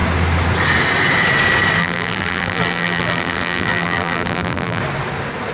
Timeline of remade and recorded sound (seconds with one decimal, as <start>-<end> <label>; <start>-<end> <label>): 0.0-1.8 recorded; 1.8-4.8 remade; 4.8-5.5 recorded